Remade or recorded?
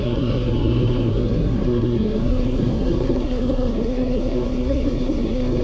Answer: remade